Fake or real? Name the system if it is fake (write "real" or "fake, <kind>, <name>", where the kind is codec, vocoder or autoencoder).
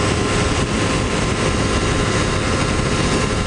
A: real